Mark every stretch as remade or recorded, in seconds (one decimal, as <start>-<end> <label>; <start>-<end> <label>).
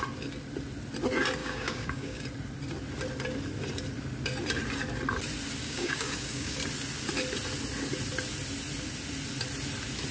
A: 0.0-1.4 recorded; 1.4-2.2 remade; 2.2-5.6 recorded; 5.6-6.6 remade; 6.6-10.1 recorded